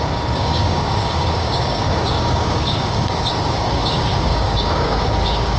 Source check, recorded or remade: remade